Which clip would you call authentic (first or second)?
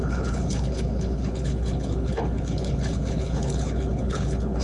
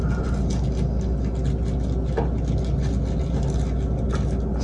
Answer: second